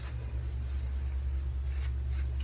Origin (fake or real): real